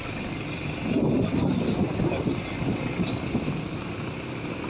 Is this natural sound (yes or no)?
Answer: yes